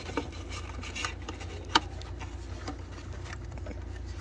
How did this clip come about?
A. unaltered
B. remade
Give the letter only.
A